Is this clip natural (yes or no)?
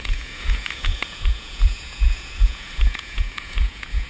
no